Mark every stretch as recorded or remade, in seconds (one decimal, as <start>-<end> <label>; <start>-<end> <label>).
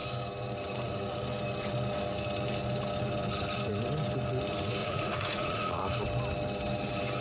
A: 0.0-4.8 recorded; 4.8-5.8 remade; 5.8-7.2 recorded